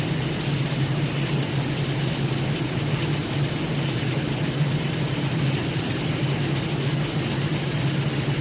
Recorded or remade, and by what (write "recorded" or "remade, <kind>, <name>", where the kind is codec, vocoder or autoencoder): recorded